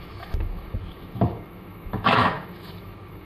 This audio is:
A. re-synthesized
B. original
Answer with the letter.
A